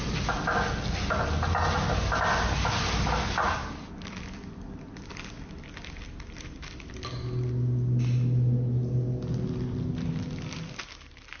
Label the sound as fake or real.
real